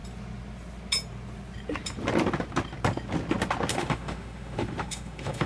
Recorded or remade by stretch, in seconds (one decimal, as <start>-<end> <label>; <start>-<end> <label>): 0.0-3.7 recorded; 3.7-5.5 remade